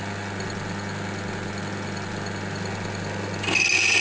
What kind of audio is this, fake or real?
real